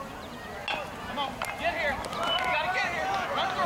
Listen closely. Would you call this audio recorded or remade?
recorded